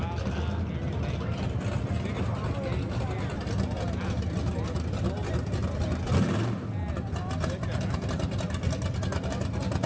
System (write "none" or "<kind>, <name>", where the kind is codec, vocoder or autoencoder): none